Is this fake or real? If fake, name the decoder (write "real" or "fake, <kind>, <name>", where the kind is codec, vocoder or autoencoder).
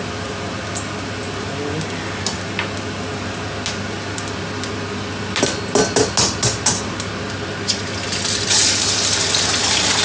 real